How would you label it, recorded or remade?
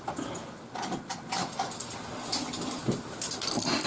recorded